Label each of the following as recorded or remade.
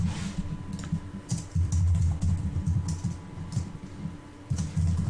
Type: recorded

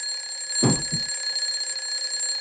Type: recorded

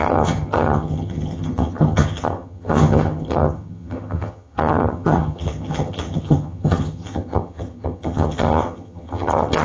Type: remade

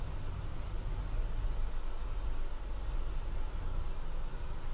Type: recorded